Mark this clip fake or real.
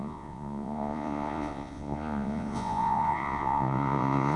fake